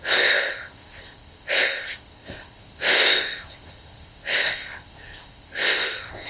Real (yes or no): no